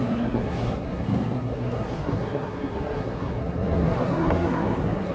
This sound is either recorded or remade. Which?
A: remade